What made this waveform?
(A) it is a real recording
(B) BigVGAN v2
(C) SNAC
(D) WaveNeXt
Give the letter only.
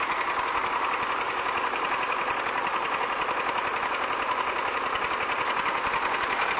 B